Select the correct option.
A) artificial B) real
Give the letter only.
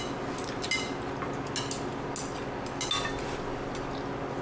B